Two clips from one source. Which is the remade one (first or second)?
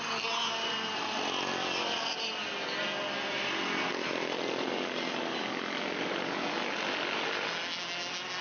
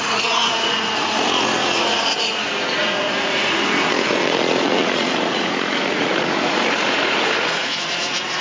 second